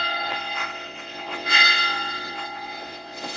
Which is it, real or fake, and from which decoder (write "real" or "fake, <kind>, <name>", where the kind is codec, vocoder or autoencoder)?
fake, vocoder, WaveNeXt